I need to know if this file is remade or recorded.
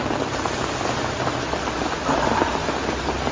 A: recorded